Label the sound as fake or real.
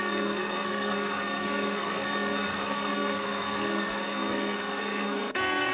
fake